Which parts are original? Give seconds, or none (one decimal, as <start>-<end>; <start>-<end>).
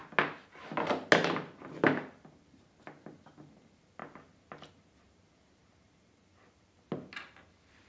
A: 0.0-7.9